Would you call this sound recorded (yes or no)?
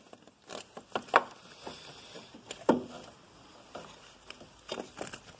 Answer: yes